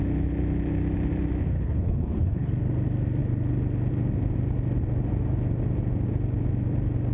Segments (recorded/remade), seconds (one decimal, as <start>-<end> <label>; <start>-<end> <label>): 0.0-1.5 recorded; 1.5-2.5 remade; 2.5-7.1 recorded